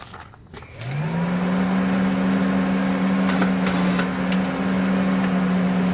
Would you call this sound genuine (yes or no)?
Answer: yes